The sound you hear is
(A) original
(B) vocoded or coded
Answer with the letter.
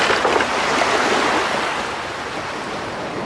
A